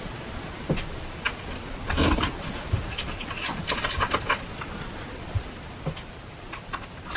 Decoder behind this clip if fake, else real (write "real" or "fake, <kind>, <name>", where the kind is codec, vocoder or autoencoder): real